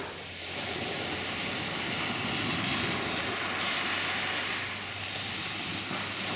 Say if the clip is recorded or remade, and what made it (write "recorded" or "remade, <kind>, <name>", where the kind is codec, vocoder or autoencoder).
recorded